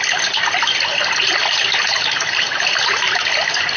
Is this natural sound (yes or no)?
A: yes